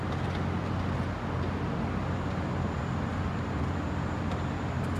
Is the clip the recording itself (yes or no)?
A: yes